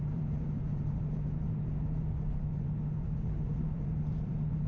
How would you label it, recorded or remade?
remade